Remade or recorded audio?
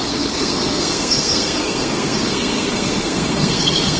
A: remade